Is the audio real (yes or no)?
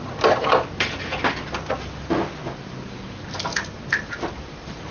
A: yes